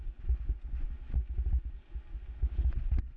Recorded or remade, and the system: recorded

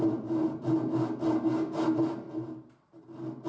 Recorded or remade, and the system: recorded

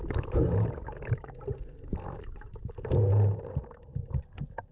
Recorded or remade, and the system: recorded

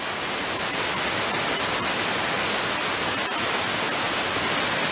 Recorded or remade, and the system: recorded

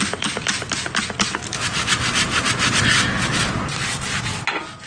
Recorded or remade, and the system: recorded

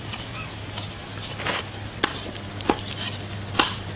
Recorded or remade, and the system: recorded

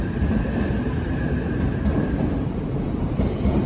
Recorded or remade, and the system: remade, vocoder, BigVGAN v2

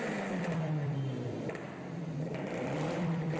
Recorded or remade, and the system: remade, vocoder, BigVGAN v2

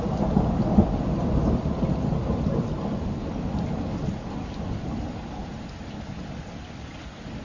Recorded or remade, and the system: recorded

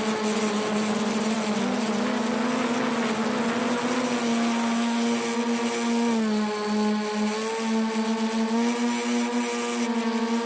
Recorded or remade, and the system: recorded